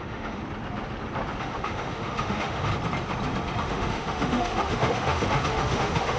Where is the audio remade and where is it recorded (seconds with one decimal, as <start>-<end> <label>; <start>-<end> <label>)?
0.0-0.4 remade; 0.4-1.4 recorded; 1.4-2.7 remade; 2.7-3.6 recorded; 3.6-6.2 remade